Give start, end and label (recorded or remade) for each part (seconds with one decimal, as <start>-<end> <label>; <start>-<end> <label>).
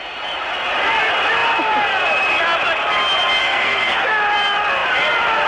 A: 0.0-3.4 recorded; 3.4-4.1 remade; 4.1-5.5 recorded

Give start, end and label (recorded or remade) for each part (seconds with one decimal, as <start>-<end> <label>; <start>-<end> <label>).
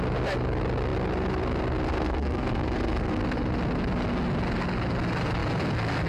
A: 0.0-1.9 recorded; 1.9-3.2 remade; 3.2-6.1 recorded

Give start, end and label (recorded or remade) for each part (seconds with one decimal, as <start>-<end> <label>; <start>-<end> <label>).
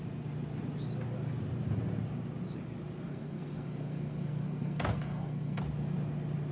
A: 0.0-3.1 recorded; 3.1-5.6 remade; 5.6-6.5 recorded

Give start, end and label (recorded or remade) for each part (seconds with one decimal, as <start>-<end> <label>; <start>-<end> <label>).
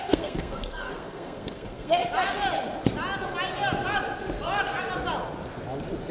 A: 0.0-2.0 remade; 2.0-6.1 recorded